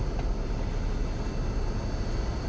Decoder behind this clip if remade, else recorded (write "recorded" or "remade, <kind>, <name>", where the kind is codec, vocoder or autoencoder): recorded